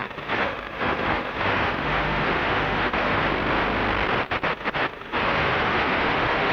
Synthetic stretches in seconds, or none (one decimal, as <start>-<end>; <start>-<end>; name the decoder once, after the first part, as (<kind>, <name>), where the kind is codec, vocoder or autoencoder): 0.0-3.2 (autoencoder, DAC-VAE); 4.5-6.5